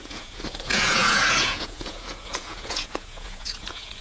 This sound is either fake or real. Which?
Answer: fake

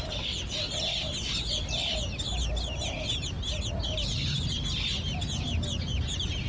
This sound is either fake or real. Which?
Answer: real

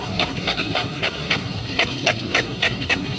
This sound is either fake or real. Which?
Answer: fake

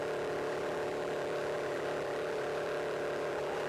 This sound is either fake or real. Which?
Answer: fake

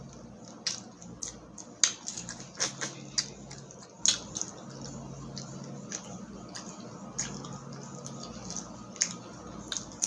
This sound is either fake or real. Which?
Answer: real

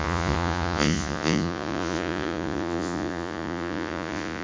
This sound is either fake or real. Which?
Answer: fake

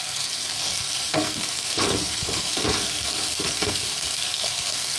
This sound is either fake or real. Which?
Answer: fake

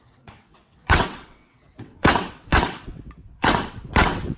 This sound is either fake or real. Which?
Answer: fake